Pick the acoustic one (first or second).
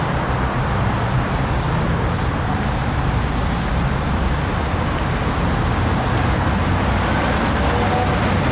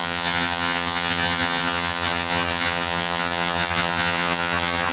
first